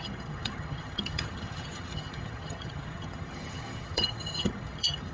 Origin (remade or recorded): remade